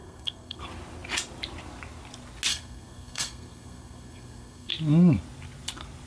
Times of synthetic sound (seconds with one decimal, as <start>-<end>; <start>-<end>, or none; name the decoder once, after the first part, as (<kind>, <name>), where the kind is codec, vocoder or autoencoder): 0.0-0.6 (codec, SNAC); 2.5-4.7